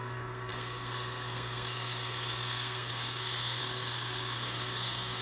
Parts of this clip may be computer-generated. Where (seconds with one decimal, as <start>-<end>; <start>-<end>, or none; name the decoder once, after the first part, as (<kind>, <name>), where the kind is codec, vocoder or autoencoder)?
0.0-5.2 (codec, SNAC)

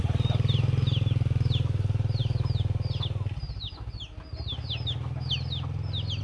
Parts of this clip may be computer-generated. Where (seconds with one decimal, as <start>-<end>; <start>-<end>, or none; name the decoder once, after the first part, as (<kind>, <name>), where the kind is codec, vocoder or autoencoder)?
none

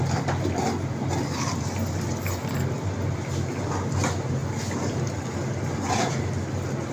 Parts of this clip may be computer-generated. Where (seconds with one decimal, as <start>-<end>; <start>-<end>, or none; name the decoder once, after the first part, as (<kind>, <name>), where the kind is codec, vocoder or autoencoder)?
none

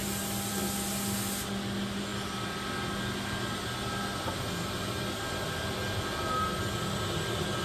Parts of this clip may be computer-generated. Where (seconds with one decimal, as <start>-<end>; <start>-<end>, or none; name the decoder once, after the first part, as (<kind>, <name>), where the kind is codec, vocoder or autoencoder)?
none

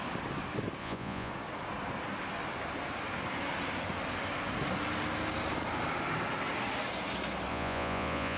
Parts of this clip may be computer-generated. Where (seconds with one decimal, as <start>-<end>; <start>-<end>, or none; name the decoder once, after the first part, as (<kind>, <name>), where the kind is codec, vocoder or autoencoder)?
0.8-1.3 (vocoder, Vocos); 7.5-8.4

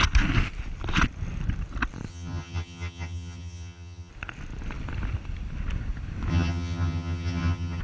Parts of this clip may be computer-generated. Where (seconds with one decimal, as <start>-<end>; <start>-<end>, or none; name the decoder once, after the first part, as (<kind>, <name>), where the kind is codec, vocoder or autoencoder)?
2.1-4.1 (vocoder, HiFi-GAN); 6.3-7.8